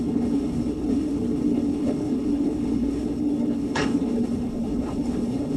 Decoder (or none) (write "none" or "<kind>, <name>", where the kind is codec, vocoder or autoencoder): codec, HILCodec